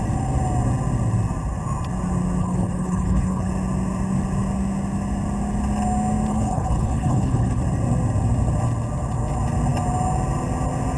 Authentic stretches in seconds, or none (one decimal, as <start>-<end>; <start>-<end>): 0.0-2.4; 3.5-6.3; 7.6-11.0